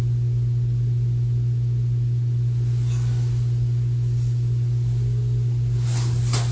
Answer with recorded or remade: recorded